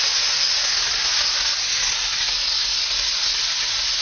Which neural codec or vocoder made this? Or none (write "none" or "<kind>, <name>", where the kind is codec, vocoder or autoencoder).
none